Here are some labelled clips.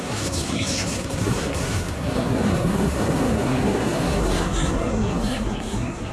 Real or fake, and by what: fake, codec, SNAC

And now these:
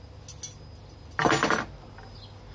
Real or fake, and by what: real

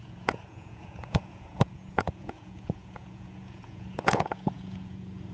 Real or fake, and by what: fake, vocoder, Vocos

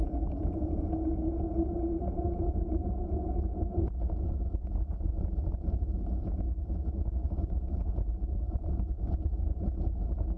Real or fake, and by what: fake, vocoder, Vocos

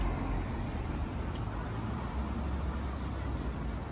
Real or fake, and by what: real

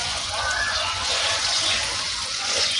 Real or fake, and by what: fake, vocoder, Vocos